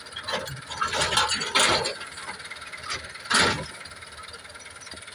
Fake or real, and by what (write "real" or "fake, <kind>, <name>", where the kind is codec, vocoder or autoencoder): real